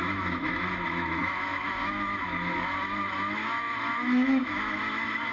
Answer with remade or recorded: remade